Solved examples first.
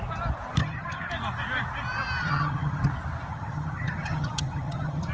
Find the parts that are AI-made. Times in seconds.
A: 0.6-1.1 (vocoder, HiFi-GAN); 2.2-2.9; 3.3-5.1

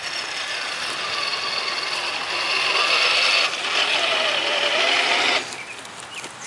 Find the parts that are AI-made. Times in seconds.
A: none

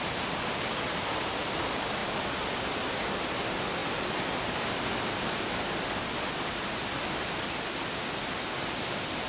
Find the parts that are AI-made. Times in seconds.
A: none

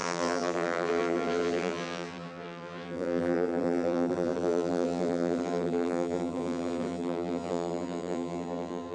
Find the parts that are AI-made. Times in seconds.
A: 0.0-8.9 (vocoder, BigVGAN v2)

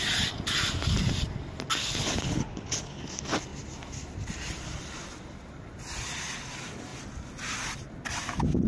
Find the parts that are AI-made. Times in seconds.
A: 1.8-3.0 (codec, HILCodec)